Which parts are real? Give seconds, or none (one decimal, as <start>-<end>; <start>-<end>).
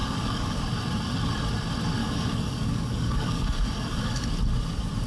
0.6-2.0; 4.2-5.1